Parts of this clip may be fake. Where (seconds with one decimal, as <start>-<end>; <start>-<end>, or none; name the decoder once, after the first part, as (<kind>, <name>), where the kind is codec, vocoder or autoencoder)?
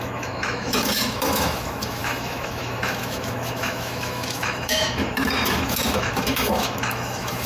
0.0-7.5 (autoencoder, DAC-VAE)